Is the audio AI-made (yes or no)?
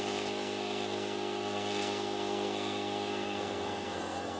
yes